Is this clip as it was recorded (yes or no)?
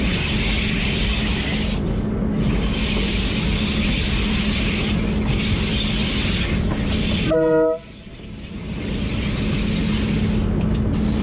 yes